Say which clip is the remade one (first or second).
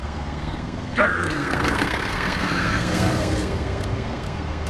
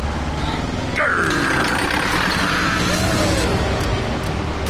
first